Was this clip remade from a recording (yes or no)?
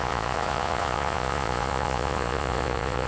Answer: yes